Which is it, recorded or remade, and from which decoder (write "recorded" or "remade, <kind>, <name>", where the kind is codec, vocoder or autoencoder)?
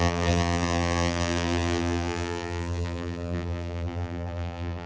remade, vocoder, BigVGAN v2